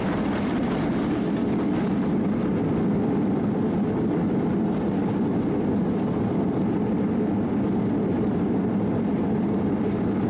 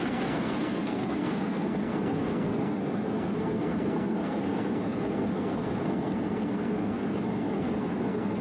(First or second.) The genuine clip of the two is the first